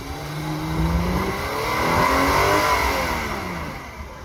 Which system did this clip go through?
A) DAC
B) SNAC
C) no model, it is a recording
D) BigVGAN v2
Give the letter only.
C